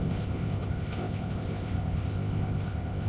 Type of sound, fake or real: fake